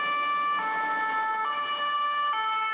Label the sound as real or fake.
real